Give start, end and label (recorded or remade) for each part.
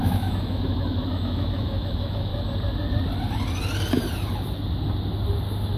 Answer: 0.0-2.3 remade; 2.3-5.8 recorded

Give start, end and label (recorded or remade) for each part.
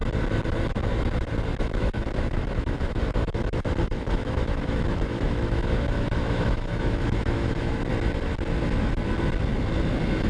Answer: 0.0-1.6 recorded; 1.6-7.9 remade; 7.9-10.3 recorded